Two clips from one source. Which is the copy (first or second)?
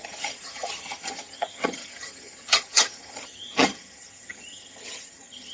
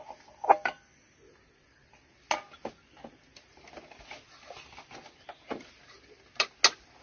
first